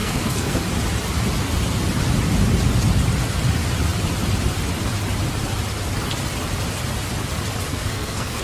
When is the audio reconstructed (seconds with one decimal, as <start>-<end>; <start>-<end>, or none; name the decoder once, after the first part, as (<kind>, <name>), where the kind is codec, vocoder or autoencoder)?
0.0-0.6 (codec, SNAC); 7.7-8.4